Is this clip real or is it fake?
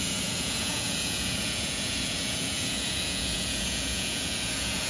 fake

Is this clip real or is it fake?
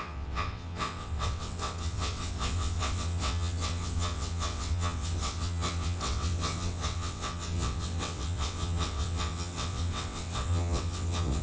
fake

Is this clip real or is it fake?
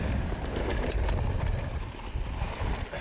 real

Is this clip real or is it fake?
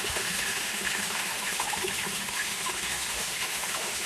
fake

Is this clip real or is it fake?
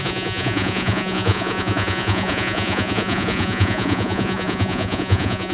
fake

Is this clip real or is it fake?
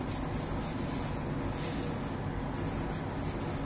real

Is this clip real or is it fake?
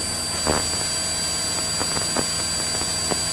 real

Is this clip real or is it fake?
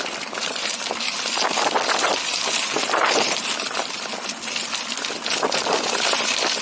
real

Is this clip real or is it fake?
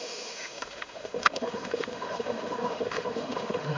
fake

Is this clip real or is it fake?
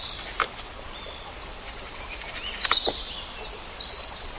real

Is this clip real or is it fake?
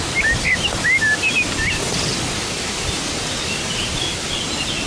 real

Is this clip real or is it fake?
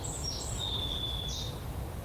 real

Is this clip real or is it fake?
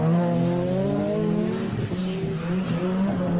real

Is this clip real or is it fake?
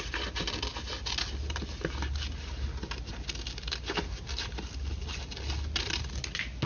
real